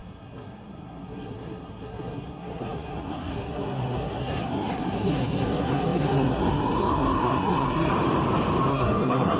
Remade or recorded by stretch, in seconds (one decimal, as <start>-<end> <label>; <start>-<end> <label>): 0.0-7.9 remade; 7.9-8.7 recorded; 8.7-9.4 remade